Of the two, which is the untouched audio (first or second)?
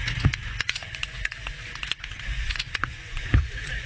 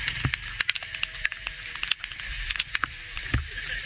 second